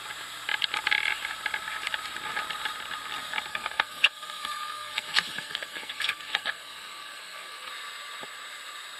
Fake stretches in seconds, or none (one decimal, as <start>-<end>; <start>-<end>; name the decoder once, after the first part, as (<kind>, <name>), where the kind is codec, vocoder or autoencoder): 3.5-7.7 (codec, SNAC)